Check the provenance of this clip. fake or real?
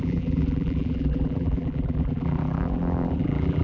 fake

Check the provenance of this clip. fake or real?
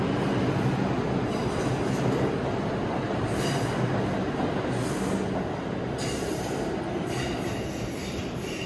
real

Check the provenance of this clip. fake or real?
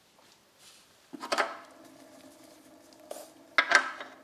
real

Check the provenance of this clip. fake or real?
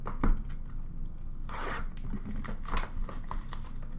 real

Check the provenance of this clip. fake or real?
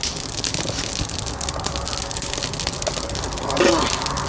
real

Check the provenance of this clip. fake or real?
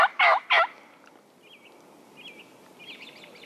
real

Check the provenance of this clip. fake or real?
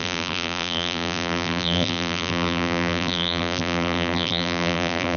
fake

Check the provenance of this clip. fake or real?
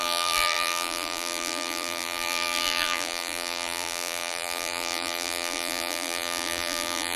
fake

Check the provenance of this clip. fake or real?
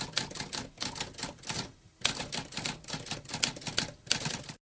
real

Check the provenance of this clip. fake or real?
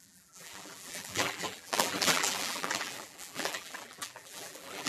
fake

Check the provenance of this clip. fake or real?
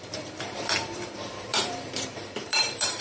fake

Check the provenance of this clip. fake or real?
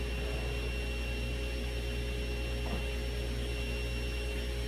real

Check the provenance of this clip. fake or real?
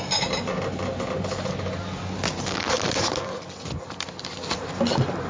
real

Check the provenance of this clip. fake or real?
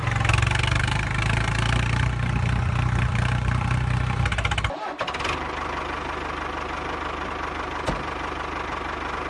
real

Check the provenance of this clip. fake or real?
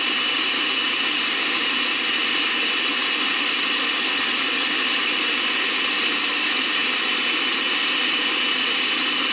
fake